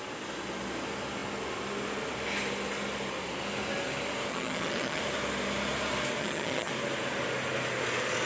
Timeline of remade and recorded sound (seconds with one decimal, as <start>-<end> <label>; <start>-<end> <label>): 0.0-4.3 recorded; 4.3-5.0 remade; 5.0-6.2 recorded; 6.2-6.7 remade; 6.7-8.3 recorded